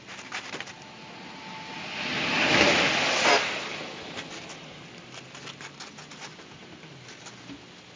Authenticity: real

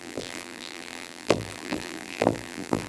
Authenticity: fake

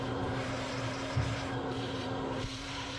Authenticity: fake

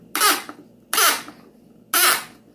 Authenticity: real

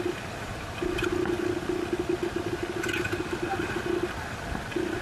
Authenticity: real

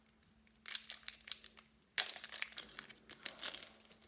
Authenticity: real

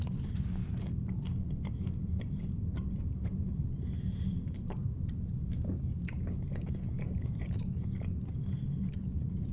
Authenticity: fake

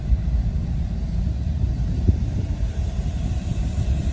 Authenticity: fake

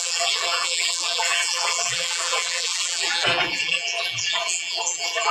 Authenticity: fake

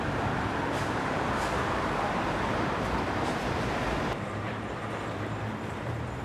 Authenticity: fake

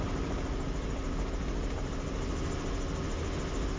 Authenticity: real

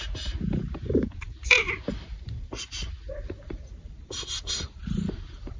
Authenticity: fake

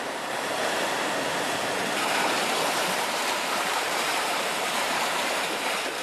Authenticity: fake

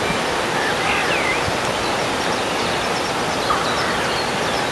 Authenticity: real